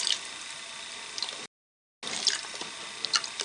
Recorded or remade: recorded